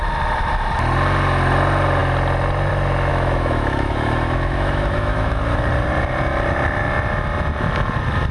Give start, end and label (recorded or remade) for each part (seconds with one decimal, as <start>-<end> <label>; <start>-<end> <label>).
0.0-3.1 recorded; 3.1-5.4 remade; 5.4-8.3 recorded